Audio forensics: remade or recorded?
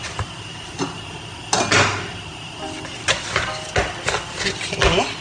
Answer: recorded